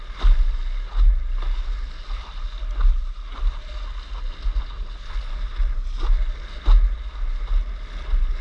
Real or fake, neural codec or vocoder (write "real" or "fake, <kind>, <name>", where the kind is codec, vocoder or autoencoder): real